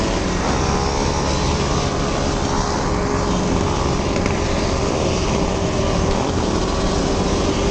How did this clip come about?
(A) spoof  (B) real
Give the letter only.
B